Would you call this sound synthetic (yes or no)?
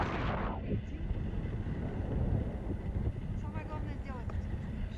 no